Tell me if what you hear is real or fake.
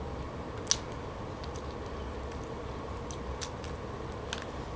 real